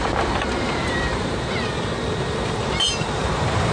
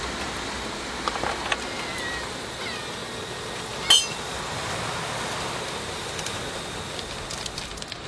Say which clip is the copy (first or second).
first